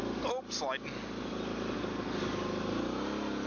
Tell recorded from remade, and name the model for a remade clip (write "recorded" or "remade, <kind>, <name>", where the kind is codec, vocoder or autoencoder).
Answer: recorded